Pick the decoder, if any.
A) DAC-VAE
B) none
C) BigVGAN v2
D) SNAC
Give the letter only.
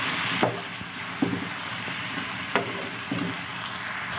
B